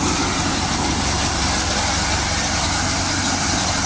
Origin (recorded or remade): recorded